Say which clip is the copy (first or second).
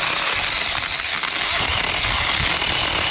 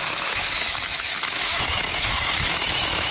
second